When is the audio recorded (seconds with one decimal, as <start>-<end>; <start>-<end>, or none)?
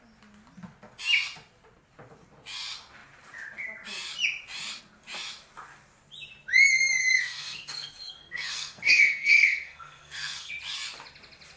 0.0-7.0; 10.5-11.6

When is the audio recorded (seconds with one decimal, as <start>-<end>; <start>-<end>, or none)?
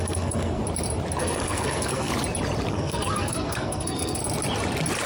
0.6-1.2; 2.1-2.7; 4.2-5.1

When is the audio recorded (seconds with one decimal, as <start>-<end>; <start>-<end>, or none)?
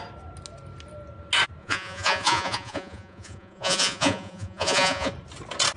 0.0-1.6; 5.1-5.8